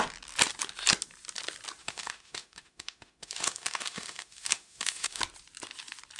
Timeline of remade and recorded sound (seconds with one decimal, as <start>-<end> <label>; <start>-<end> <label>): 0.0-1.8 recorded; 1.8-5.2 remade; 5.2-6.2 recorded